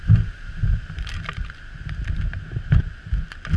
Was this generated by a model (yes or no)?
yes